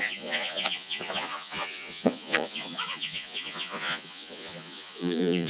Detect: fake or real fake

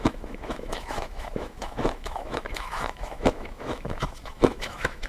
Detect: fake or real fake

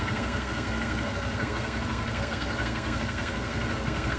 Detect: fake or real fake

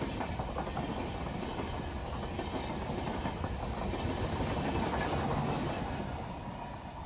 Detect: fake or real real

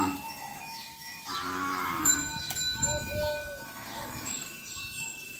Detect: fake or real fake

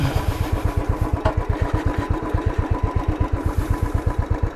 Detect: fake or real fake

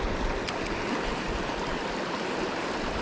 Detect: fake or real real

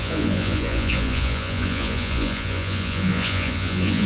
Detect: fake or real fake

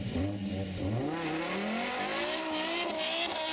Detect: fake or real real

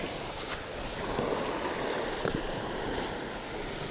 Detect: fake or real real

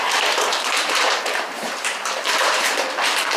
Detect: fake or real fake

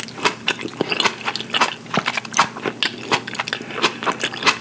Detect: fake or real real